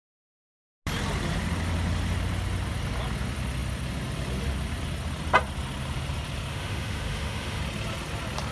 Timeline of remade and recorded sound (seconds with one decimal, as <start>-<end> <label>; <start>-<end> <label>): 0.0-6.5 recorded; 6.5-7.6 remade; 7.6-8.5 recorded